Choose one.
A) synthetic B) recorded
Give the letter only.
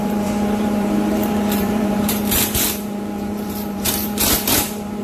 A